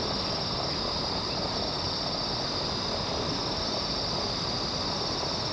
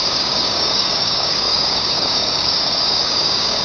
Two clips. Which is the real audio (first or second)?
first